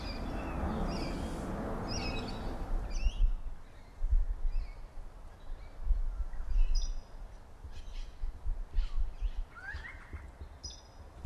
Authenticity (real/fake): real